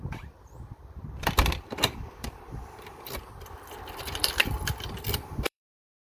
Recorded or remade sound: remade